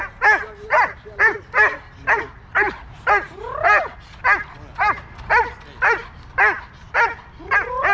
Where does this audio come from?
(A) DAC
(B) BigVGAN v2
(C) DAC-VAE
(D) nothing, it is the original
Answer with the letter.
D